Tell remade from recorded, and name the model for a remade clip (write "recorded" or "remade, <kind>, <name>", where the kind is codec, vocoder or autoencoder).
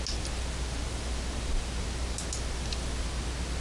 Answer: recorded